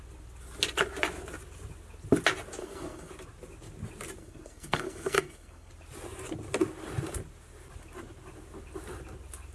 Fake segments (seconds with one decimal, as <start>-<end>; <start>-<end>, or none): 2.6-3.1; 4.2-5.7